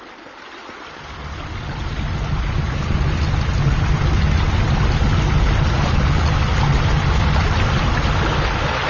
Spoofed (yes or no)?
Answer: no